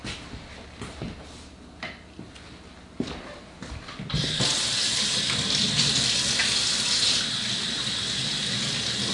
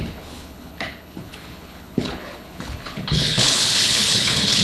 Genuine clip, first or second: first